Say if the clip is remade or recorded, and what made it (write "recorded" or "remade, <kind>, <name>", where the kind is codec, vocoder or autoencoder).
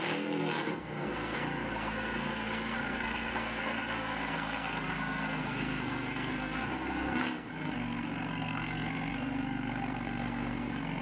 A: remade, codec, SNAC